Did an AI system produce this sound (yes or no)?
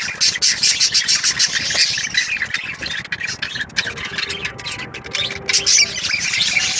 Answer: no